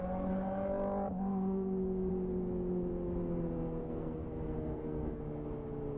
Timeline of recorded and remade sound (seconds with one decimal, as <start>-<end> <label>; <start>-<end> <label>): 0.0-1.3 recorded; 1.3-2.1 remade; 2.1-3.8 recorded; 3.8-5.2 remade; 5.2-6.0 recorded